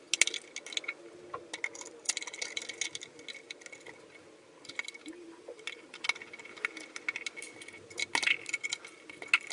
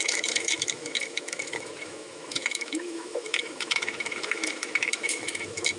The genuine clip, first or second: first